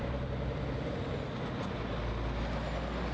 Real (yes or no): yes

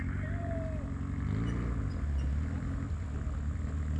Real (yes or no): yes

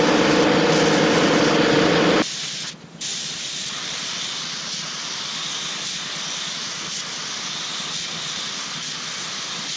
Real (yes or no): yes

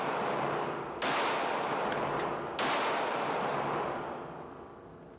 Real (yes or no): yes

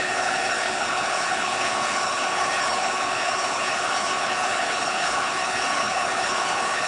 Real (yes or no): no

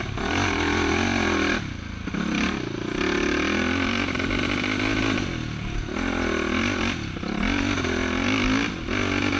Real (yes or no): yes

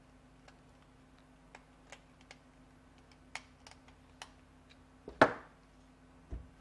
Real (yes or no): yes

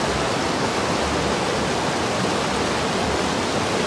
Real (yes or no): yes